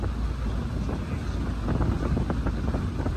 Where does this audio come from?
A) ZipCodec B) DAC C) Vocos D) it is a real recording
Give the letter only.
D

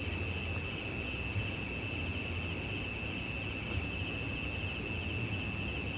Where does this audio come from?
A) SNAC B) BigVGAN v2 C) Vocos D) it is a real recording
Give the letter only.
D